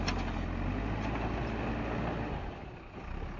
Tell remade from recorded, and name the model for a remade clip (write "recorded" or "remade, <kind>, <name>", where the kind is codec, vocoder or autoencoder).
recorded